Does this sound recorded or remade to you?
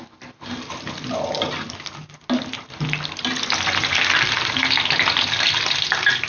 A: recorded